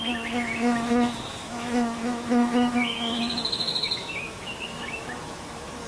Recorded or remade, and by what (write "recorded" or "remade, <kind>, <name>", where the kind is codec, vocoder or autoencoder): remade, autoencoder, DAC-VAE